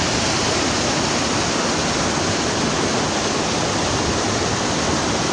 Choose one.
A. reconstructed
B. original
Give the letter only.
B